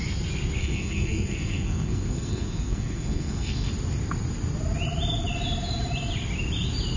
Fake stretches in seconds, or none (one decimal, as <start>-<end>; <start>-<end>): 0.6-3.7